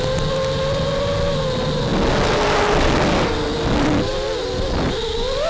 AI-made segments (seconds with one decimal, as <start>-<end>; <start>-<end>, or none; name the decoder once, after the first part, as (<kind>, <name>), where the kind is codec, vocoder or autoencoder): none